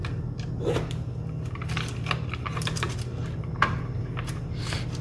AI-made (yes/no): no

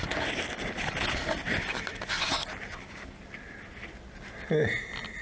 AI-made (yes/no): no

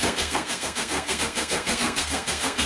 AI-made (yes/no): yes